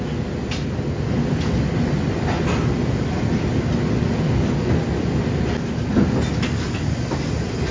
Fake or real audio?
real